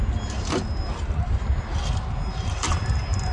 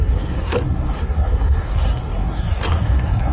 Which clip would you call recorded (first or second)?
first